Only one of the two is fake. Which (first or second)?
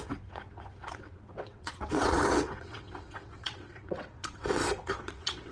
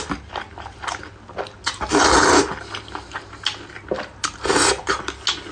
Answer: first